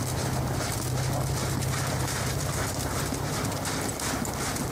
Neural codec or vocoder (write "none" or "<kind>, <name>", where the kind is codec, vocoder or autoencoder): none